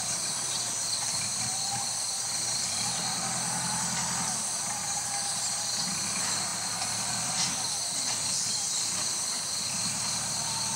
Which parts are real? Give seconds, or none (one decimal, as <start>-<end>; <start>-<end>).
0.0-10.8